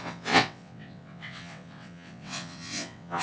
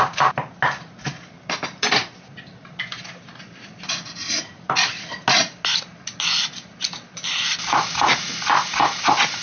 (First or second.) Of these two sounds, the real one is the second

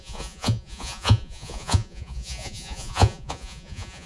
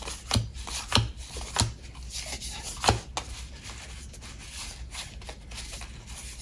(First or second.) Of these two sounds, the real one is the second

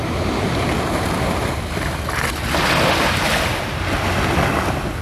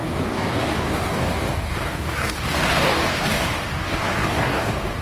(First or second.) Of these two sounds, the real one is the first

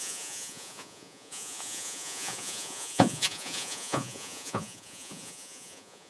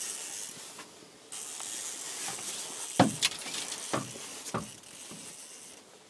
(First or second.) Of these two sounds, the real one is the second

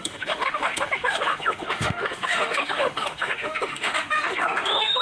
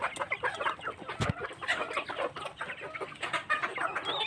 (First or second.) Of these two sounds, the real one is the second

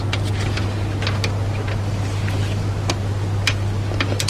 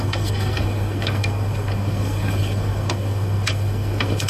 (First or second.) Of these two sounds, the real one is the first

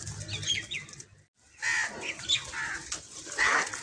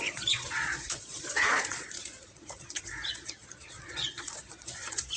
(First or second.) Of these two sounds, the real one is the first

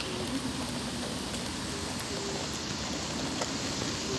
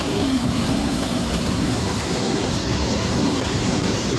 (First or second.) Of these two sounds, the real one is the first